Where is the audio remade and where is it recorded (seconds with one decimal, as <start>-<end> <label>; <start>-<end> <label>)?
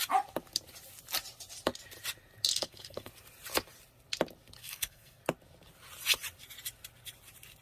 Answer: 0.0-2.5 recorded; 2.5-3.1 remade; 3.1-4.6 recorded; 4.6-5.2 remade; 5.2-7.6 recorded